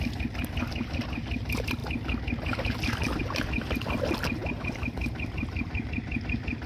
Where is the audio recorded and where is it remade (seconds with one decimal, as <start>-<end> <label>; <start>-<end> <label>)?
0.0-6.7 recorded